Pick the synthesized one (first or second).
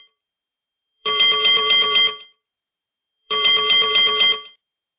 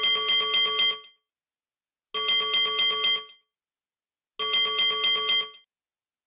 first